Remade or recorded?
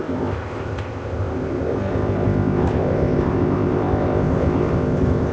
remade